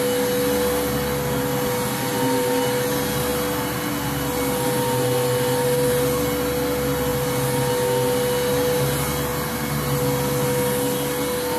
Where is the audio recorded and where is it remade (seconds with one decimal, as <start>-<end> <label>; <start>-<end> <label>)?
0.0-11.6 recorded